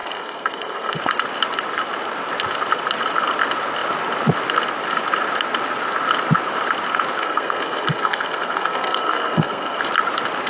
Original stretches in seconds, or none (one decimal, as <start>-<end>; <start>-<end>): 1.0-7.2; 9.8-10.5